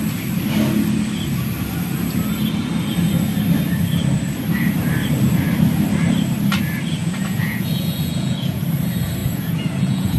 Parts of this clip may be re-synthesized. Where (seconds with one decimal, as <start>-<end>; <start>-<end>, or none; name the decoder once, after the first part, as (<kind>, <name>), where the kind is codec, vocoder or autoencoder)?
7.0-8.6 (vocoder, Vocos); 9.2-10.2